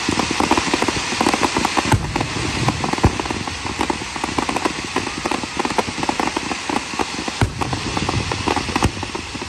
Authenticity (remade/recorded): recorded